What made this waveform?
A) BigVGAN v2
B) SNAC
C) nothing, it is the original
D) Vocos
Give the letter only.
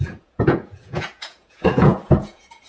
D